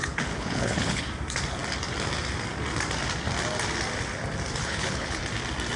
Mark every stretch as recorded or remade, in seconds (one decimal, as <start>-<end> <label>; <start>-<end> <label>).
0.0-1.0 remade; 1.0-4.6 recorded; 4.6-5.2 remade; 5.2-5.8 recorded

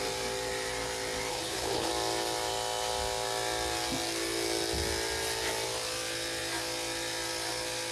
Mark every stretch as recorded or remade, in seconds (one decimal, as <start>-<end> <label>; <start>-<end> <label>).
0.0-1.3 recorded; 1.3-1.9 remade; 1.9-7.9 recorded

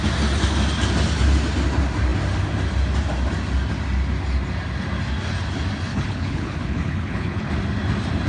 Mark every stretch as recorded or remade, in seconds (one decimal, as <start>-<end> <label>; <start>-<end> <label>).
0.0-5.9 recorded; 5.9-7.5 remade; 7.5-8.3 recorded